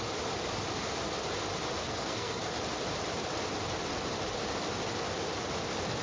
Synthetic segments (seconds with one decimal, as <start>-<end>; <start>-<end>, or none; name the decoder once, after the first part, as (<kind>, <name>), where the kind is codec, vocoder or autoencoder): 1.8-2.5 (codec, SNAC)